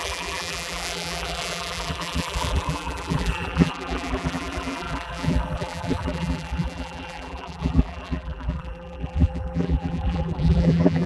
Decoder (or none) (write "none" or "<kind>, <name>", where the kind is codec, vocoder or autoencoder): vocoder, BigVGAN v2